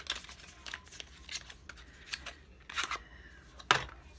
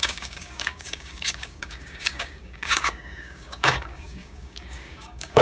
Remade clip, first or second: second